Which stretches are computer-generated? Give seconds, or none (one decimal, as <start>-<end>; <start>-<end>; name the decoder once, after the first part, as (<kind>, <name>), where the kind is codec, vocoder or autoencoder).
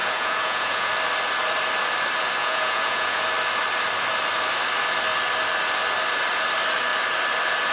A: 0.0-0.9 (vocoder, Vocos); 2.4-3.2